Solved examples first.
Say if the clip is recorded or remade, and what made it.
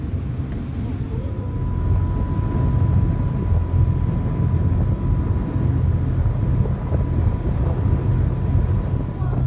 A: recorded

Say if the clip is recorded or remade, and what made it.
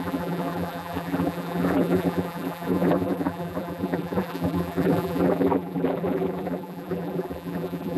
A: remade, vocoder, BigVGAN v2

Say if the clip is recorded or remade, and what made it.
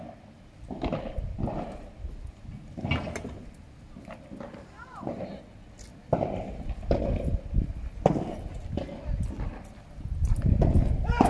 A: recorded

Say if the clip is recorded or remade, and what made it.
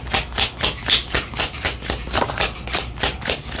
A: recorded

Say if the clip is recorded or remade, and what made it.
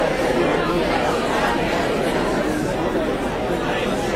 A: recorded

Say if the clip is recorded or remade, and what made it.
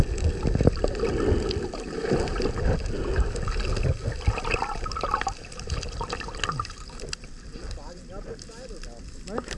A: recorded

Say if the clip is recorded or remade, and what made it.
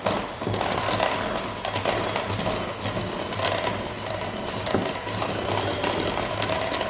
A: recorded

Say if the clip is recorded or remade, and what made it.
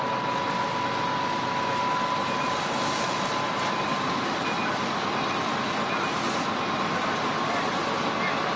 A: recorded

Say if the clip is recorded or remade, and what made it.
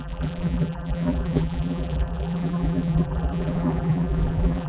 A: remade, vocoder, BigVGAN v2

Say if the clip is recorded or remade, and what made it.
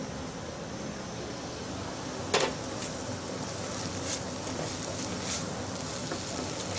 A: recorded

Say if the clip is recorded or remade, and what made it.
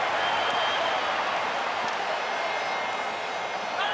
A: recorded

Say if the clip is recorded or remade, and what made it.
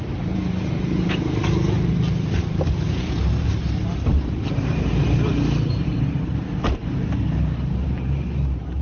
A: remade, vocoder, BigVGAN v2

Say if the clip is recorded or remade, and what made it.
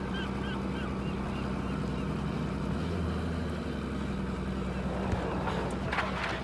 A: recorded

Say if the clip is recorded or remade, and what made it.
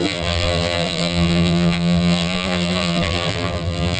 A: remade, vocoder, BigVGAN v2